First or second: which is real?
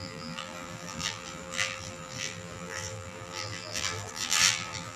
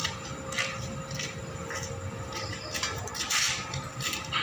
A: second